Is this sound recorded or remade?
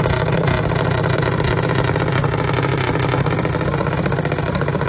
recorded